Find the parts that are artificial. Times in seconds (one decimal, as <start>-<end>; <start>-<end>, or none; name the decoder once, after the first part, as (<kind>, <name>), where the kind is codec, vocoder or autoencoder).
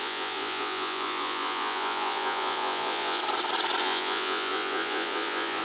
0.0-3.2 (vocoder, Vocos); 3.8-5.6